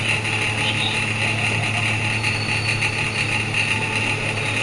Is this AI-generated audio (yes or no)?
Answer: no